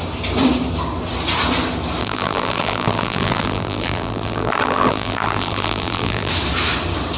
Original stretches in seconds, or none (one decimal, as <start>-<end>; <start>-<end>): 0.0-2.0; 6.3-7.2